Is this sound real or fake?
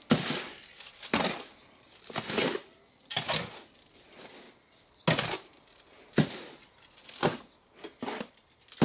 real